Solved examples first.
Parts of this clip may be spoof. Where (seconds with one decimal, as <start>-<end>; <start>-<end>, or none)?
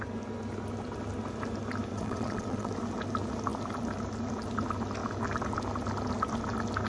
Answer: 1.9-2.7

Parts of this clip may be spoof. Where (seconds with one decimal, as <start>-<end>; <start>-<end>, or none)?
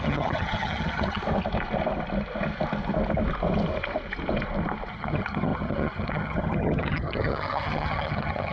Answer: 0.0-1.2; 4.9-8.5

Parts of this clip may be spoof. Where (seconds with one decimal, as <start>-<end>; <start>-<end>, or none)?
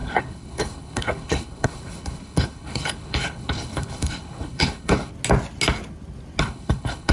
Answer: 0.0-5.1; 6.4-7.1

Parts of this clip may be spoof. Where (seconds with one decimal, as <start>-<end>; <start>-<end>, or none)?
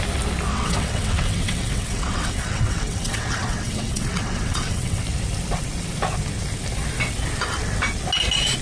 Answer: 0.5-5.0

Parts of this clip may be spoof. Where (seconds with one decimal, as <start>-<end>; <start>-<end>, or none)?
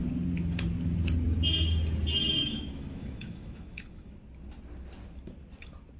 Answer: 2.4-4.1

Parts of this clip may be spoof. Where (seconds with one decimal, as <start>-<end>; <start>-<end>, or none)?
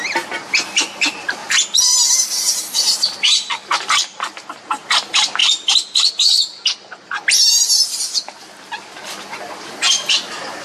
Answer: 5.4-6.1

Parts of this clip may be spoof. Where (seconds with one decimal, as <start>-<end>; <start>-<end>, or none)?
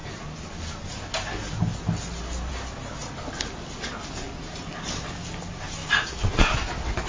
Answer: 5.8-6.3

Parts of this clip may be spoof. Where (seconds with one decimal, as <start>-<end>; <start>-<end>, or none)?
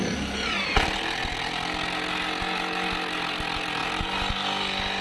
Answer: none